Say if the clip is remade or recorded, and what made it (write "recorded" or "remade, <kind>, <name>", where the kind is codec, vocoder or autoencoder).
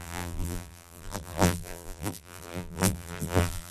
remade, vocoder, BigVGAN v2